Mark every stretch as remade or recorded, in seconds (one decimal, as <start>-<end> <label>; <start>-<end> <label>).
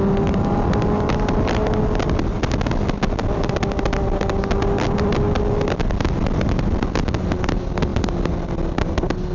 0.0-9.3 recorded